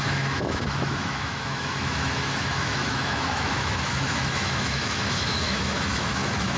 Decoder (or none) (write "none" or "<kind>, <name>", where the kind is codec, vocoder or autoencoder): autoencoder, DAC-VAE